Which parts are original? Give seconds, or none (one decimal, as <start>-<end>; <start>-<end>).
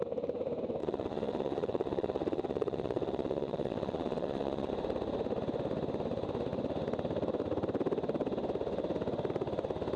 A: 0.0-0.8; 4.7-10.0